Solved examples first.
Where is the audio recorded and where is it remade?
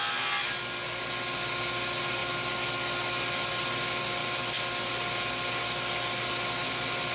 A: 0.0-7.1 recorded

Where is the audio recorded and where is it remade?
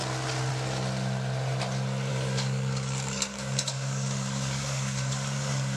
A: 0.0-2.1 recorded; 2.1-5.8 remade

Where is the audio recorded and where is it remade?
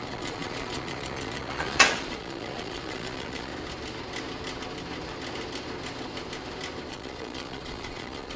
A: 0.0-3.5 remade; 3.5-6.9 recorded; 6.9-8.4 remade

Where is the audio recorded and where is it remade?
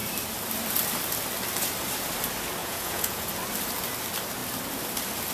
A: 0.0-2.6 recorded; 2.6-3.3 remade; 3.3-5.3 recorded